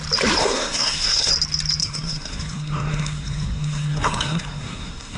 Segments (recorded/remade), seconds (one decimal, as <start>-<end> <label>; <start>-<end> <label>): 0.0-0.4 recorded; 0.4-1.3 remade; 1.3-1.8 recorded; 1.8-5.2 remade